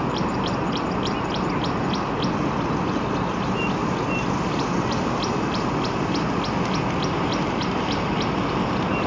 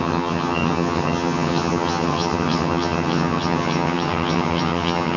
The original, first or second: first